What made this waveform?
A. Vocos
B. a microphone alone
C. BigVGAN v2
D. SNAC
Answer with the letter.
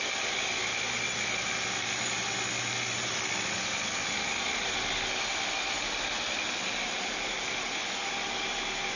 B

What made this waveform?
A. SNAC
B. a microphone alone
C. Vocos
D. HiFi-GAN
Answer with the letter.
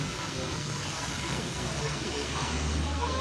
A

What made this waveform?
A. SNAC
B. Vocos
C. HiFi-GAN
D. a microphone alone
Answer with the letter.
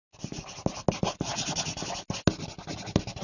D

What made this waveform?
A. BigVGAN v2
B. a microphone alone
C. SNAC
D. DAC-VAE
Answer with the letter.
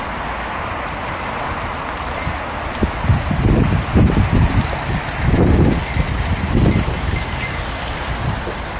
B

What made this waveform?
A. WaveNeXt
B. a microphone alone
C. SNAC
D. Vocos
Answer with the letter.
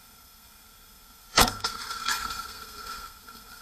C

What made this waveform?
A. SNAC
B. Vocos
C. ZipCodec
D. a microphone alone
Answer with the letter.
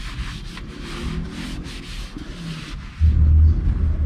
D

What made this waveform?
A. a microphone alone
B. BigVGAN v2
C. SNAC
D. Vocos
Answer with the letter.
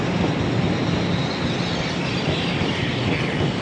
A